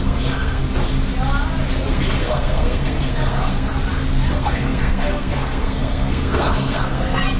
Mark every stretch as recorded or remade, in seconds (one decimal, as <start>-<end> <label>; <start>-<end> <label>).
0.0-0.6 remade; 0.6-1.9 recorded; 1.9-3.7 remade; 3.7-4.3 recorded; 4.3-7.4 remade

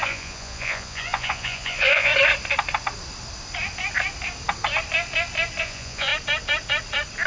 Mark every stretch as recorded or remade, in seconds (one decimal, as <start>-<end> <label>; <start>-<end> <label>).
0.0-2.1 remade; 2.1-5.6 recorded; 5.6-6.1 remade; 6.1-7.3 recorded

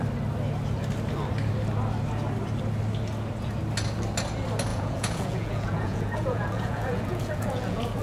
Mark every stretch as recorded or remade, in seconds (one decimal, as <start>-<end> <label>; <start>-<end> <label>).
0.0-4.7 recorded; 4.7-8.0 remade

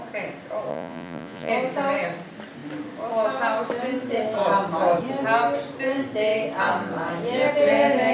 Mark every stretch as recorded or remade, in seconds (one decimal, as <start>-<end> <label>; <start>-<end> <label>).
0.0-0.7 recorded; 0.7-1.5 remade; 1.5-8.1 recorded